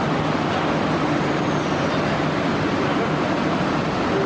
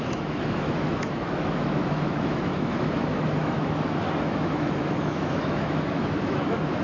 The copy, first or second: second